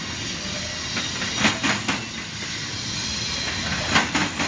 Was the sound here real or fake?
real